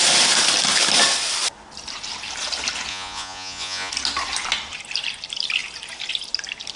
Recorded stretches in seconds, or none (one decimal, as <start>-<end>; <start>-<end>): 0.0-2.9; 3.9-6.8